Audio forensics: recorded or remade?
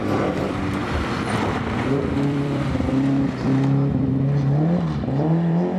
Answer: remade